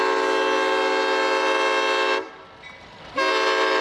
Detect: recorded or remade recorded